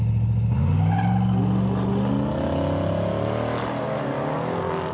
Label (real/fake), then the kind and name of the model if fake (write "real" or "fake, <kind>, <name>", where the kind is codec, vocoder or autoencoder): real